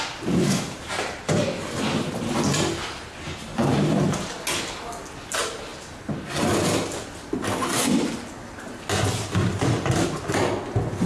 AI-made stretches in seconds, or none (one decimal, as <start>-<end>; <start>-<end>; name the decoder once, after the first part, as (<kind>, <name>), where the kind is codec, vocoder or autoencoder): 3.5-4.3 (vocoder, BigVGAN v2); 9.5-10.0